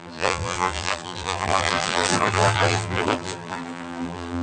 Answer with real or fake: fake